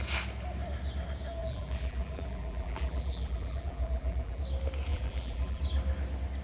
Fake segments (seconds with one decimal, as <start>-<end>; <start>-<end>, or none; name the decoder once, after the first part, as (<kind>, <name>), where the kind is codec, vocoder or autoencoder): 1.4-4.4 (vocoder, BigVGAN v2); 4.9-5.6